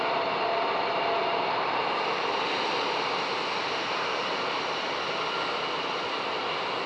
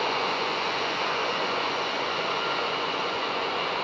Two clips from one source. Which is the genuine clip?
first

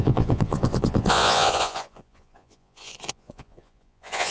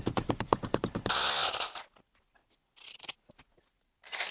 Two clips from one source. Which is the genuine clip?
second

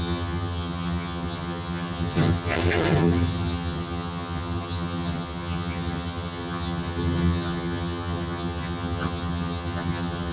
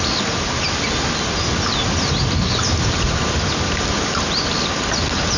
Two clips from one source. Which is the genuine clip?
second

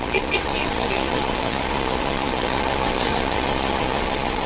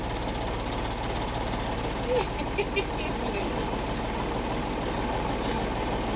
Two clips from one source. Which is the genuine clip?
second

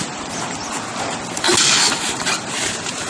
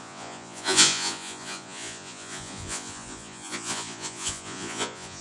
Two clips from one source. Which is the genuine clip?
first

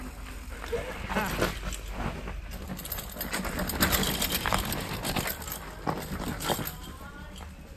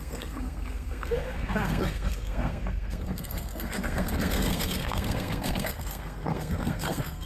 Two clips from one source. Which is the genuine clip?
first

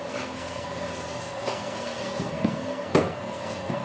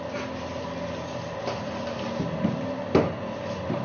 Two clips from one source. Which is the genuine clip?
second